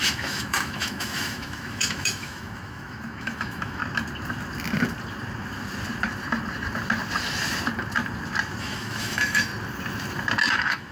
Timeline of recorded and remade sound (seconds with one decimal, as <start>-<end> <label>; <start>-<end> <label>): 0.0-3.8 remade; 3.8-8.6 recorded; 8.6-9.5 remade; 9.5-10.5 recorded; 10.5-10.9 remade